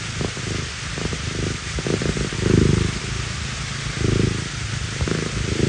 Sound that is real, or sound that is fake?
real